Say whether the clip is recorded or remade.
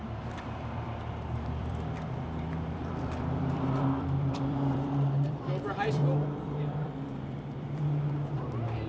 remade